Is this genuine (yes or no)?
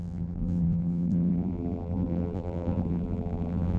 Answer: no